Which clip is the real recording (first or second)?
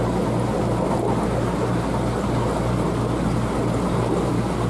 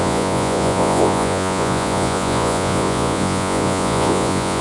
first